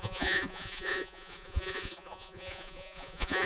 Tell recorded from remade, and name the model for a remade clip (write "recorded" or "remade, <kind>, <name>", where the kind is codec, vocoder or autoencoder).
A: remade, vocoder, Vocos